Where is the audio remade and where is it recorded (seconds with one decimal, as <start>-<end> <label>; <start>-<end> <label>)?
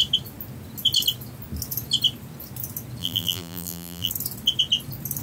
0.0-3.0 recorded; 3.0-4.1 remade; 4.1-5.2 recorded